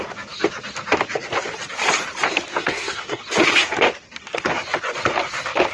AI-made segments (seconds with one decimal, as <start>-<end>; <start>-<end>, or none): 2.5-3.2